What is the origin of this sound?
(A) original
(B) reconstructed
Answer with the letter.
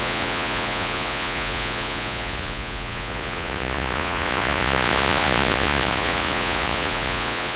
B